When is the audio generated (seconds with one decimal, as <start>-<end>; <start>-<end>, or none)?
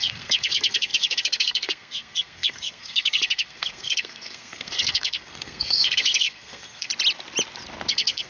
0.0-6.9; 7.9-8.3